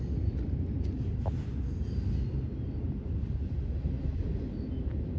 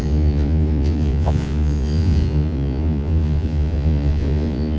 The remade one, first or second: second